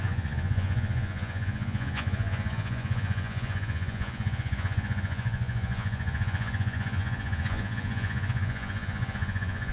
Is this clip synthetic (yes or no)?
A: yes